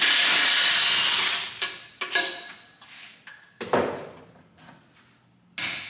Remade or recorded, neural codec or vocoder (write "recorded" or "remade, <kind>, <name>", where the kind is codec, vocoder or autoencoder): recorded